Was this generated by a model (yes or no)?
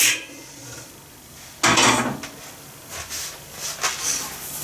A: no